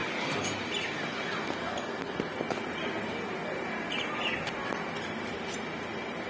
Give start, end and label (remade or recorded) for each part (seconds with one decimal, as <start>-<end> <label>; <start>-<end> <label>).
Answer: 0.0-6.3 recorded